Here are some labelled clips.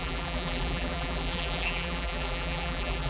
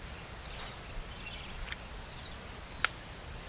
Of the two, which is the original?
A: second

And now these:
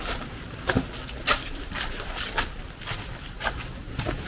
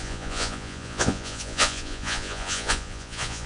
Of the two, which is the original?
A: first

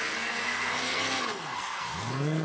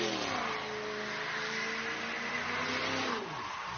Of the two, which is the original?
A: second